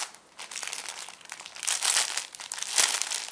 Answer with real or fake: real